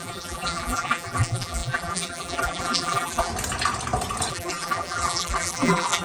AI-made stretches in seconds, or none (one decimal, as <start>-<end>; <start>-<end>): 0.0-3.3; 4.3-6.0